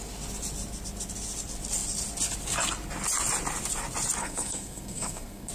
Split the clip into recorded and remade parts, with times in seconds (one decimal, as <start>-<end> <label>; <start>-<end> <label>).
0.0-4.2 recorded; 4.2-5.5 remade